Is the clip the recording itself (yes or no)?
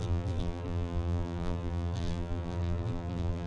no